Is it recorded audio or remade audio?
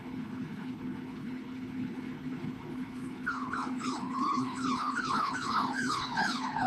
remade